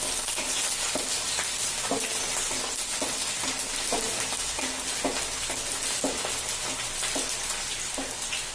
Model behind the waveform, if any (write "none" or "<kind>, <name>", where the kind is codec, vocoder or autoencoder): none